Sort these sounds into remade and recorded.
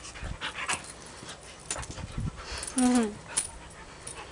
recorded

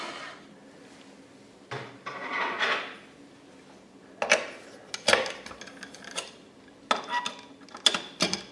recorded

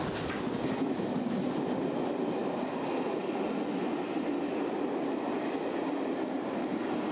recorded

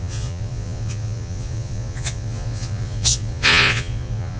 remade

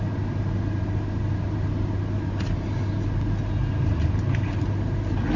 recorded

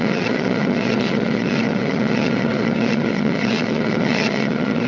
remade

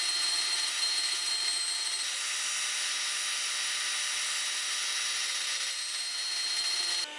recorded